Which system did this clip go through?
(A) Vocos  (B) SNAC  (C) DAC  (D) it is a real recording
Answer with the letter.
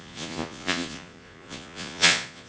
A